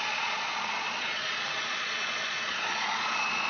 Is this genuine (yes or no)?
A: no